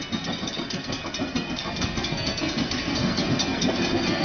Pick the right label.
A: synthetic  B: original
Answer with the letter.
A